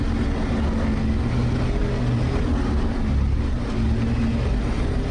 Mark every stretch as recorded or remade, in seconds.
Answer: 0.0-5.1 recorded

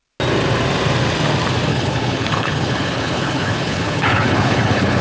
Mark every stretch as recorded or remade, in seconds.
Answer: 0.0-1.7 recorded; 1.7-5.0 remade

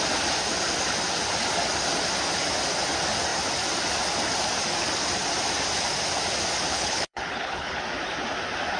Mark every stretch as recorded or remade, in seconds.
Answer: 0.0-6.7 recorded; 6.7-7.8 remade; 7.8-8.8 recorded

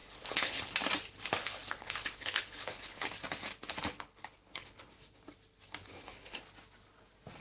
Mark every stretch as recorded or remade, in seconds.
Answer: 0.0-0.7 remade; 0.7-1.4 recorded; 1.4-3.1 remade; 3.1-3.8 recorded; 3.8-4.9 remade; 4.9-5.9 recorded; 5.9-6.4 remade; 6.4-7.4 recorded

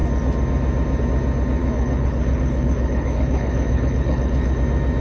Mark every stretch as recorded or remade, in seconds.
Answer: 0.0-1.6 recorded; 1.6-4.6 remade; 4.6-5.0 recorded

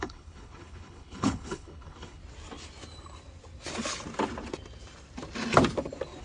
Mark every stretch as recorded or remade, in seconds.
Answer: 0.0-2.2 remade; 2.2-6.2 recorded

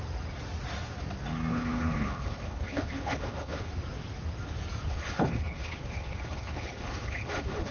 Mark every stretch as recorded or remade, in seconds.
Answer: 0.0-1.5 recorded; 1.5-3.7 remade; 3.7-4.9 recorded; 4.9-7.7 remade